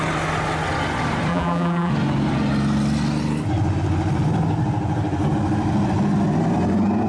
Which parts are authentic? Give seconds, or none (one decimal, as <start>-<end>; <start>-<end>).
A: 0.0-1.3; 1.9-7.1